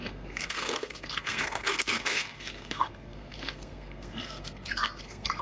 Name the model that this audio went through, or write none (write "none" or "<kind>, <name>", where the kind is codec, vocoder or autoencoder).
codec, SNAC